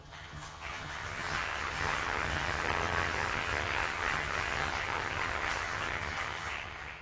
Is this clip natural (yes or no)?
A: no